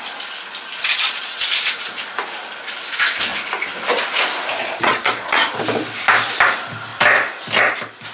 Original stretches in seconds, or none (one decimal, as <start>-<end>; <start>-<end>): 0.0-0.8; 1.4-4.6; 5.4-8.1